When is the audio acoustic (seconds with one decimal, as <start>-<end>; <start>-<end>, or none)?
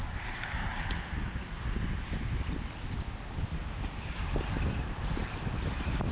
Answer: 0.0-6.1